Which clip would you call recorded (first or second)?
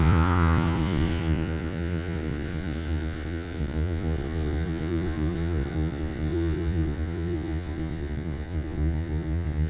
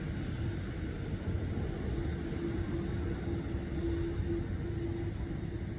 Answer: second